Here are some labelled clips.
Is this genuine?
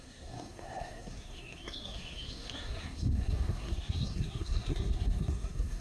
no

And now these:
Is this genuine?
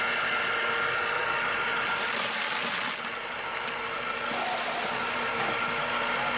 yes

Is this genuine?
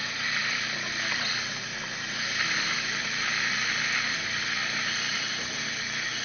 yes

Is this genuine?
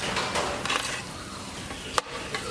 yes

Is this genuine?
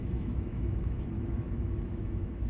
no